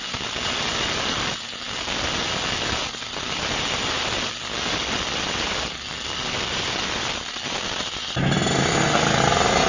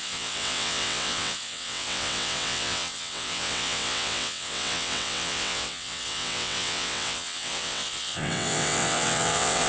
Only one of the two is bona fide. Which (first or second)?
first